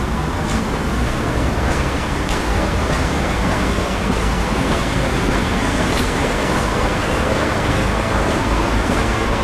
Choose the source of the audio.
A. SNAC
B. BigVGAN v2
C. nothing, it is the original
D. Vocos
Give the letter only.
A